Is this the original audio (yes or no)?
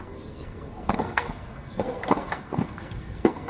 no